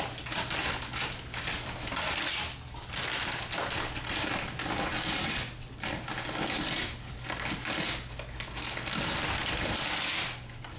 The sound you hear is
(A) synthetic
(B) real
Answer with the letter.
B